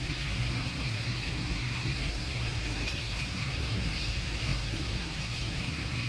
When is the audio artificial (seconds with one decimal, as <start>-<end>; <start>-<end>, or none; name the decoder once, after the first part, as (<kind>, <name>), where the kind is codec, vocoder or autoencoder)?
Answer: 0.0-6.1 (codec, SNAC)